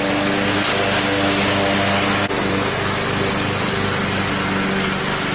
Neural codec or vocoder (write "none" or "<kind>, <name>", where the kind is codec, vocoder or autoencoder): none